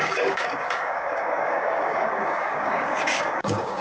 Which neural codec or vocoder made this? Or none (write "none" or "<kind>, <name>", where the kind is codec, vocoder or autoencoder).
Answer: codec, DAC